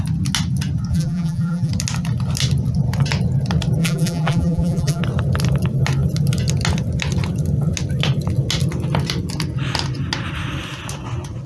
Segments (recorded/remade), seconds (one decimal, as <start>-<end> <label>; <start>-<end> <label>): 0.0-0.9 recorded; 0.9-1.7 remade; 1.7-3.8 recorded; 3.8-5.0 remade; 5.0-11.5 recorded